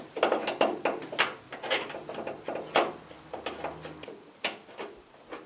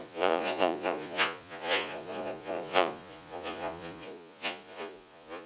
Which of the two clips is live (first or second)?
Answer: first